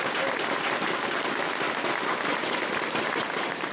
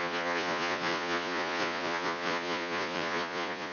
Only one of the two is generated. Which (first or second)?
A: second